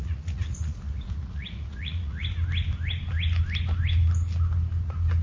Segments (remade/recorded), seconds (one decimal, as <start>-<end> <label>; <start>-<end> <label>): 0.0-2.3 remade; 2.3-5.2 recorded